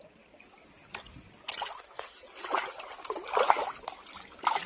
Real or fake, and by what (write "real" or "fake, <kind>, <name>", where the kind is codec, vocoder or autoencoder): real